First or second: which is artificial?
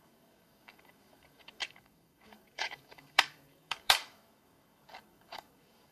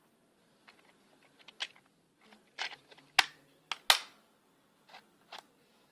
first